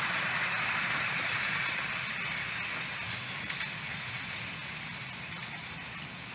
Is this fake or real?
real